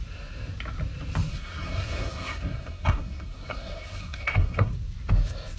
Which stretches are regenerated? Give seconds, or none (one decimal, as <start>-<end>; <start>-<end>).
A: 1.3-4.7